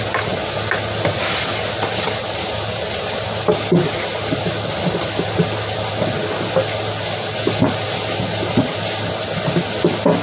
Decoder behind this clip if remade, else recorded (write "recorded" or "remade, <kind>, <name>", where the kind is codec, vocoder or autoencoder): recorded